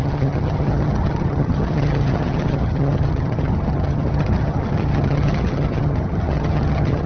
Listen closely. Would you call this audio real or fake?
fake